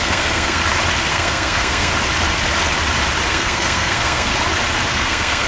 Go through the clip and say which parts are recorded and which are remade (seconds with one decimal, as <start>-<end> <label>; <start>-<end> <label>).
0.0-0.6 remade; 0.6-1.1 recorded; 1.1-1.9 remade; 1.9-3.3 recorded; 3.3-4.3 remade; 4.3-4.9 recorded; 4.9-5.5 remade